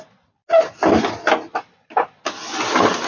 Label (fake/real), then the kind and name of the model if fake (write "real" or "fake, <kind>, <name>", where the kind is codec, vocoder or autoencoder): real